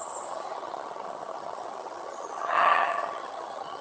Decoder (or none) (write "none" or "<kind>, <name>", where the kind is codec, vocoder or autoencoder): vocoder, HiFi-GAN